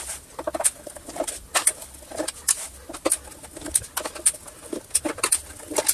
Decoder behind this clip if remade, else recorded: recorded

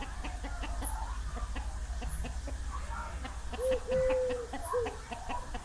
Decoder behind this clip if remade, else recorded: recorded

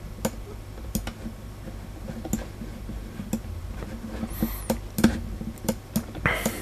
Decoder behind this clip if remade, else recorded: recorded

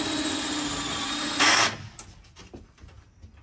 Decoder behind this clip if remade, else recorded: recorded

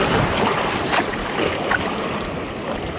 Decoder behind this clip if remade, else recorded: recorded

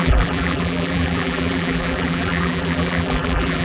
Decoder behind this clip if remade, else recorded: remade, vocoder, BigVGAN v2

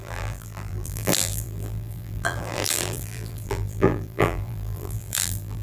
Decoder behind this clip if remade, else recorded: remade, vocoder, BigVGAN v2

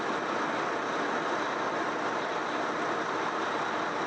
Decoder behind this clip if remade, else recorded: remade, vocoder, BigVGAN v2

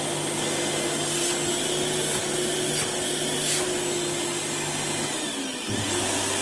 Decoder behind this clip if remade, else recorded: recorded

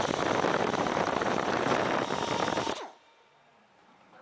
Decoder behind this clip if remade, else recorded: remade, vocoder, BigVGAN v2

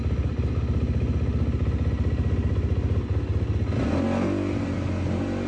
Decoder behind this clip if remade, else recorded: recorded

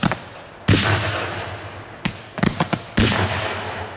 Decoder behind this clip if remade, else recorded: recorded